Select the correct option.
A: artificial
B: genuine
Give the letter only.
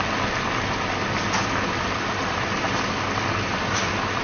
B